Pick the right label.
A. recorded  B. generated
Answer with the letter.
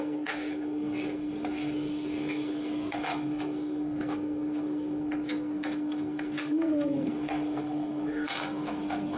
B